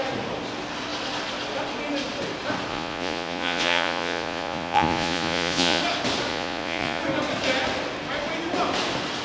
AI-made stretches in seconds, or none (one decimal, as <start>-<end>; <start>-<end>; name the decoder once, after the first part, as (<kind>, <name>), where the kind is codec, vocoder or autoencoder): 2.7-5.8 (vocoder, Vocos); 6.3-7.0